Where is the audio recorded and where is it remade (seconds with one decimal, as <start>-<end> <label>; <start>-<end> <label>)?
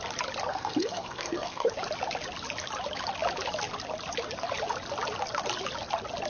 0.0-0.5 recorded; 0.5-1.7 remade; 1.7-6.3 recorded